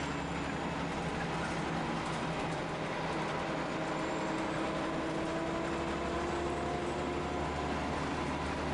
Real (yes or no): yes